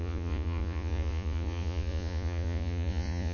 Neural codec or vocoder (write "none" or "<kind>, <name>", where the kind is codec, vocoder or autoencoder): vocoder, Vocos